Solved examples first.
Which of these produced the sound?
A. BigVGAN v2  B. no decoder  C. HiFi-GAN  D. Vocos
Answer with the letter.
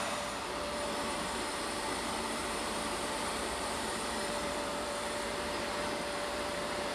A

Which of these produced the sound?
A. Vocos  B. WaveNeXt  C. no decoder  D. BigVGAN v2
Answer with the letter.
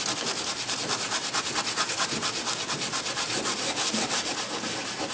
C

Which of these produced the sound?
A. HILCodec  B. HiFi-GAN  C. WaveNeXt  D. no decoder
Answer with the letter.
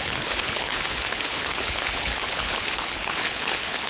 A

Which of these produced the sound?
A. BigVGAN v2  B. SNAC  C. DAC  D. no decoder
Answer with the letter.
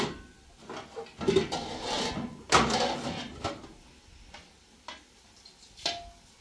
D